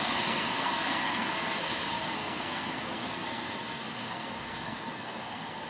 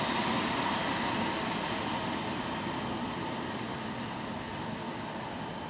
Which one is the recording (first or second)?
second